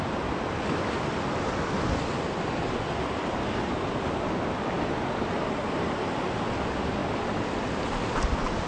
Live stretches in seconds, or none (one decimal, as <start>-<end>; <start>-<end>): 0.0-8.7